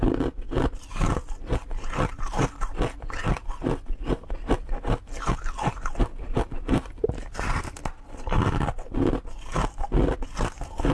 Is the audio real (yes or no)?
yes